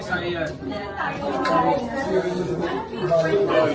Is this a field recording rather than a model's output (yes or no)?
yes